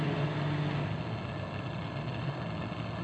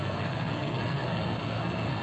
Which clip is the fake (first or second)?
second